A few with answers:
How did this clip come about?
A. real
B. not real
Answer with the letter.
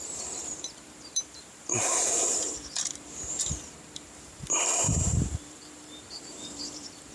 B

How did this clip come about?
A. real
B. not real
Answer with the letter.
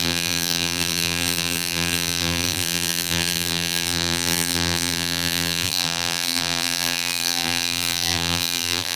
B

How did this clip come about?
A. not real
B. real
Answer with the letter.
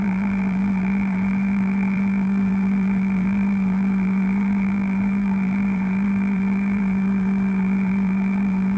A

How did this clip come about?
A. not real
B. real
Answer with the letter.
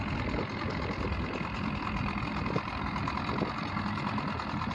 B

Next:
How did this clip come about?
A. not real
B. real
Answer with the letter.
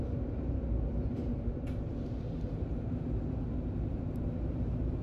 A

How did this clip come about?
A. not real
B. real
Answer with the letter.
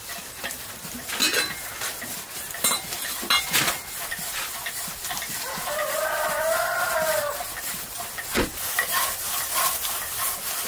B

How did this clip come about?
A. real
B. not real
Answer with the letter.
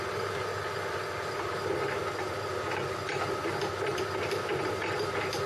A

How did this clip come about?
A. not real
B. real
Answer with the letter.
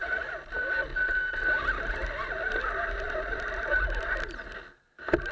B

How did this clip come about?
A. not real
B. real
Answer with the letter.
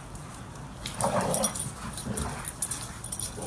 B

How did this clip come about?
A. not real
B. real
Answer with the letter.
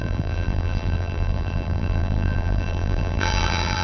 A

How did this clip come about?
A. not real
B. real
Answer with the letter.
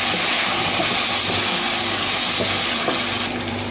B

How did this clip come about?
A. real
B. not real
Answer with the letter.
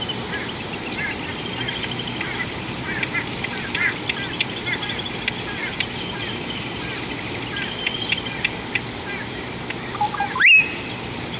A